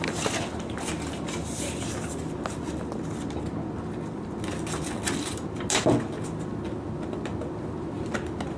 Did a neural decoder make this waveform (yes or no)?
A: no